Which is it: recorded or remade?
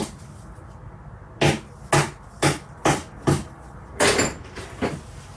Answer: recorded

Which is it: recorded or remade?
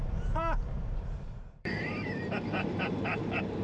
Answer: remade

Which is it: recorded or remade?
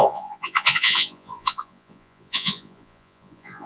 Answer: remade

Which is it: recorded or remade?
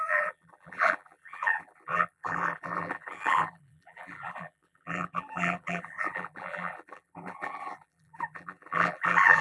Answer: remade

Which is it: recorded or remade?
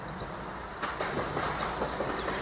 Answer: recorded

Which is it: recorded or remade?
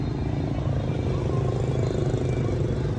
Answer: recorded